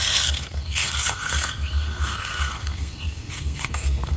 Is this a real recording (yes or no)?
no